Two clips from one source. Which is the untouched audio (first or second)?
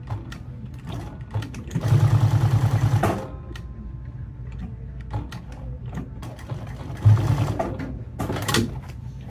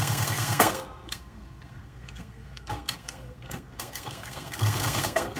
first